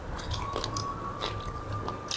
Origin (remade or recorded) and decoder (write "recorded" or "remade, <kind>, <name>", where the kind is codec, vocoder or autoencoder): recorded